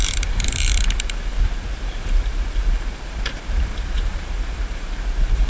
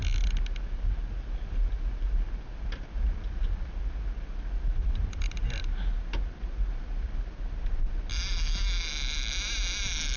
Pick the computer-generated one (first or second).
first